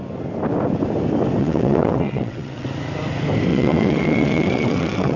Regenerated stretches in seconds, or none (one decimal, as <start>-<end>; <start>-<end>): 1.4-2.7; 3.5-5.2